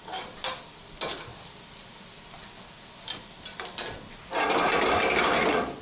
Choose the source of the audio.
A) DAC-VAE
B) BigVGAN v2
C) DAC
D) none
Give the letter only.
D